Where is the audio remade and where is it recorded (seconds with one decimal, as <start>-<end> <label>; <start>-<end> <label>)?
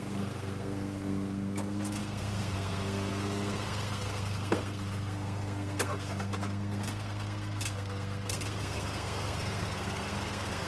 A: 0.0-10.7 remade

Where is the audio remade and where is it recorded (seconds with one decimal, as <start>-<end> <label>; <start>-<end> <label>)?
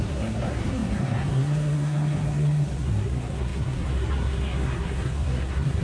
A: 0.0-5.8 remade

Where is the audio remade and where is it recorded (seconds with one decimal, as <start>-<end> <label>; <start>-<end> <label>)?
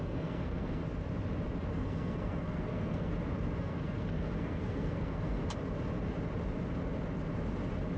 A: 0.0-0.8 remade; 0.8-1.7 recorded; 1.7-3.1 remade; 3.1-3.6 recorded; 3.6-5.4 remade; 5.4-8.0 recorded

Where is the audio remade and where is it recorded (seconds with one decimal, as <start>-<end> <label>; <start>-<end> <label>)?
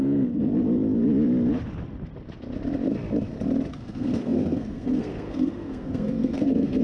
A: 0.0-0.5 remade; 0.5-3.7 recorded; 3.7-6.8 remade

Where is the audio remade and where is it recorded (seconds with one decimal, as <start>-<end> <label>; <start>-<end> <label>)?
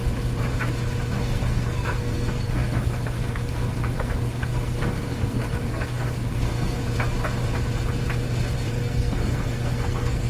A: 0.0-1.2 recorded; 1.2-6.8 remade; 6.8-8.7 recorded; 8.7-10.3 remade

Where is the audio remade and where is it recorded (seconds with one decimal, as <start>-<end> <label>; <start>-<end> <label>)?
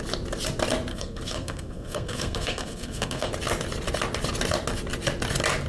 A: 0.0-0.9 recorded; 0.9-3.3 remade; 3.3-5.7 recorded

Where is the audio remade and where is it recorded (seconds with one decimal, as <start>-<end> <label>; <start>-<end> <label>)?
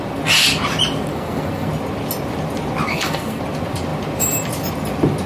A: 0.0-1.1 recorded; 1.1-1.7 remade; 1.7-2.9 recorded; 2.9-3.4 remade; 3.4-5.3 recorded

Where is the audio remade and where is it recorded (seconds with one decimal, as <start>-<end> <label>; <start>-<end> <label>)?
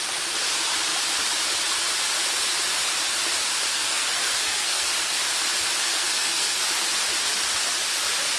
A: 0.0-3.7 recorded; 3.7-5.2 remade; 5.2-5.9 recorded; 5.9-6.6 remade; 6.6-8.4 recorded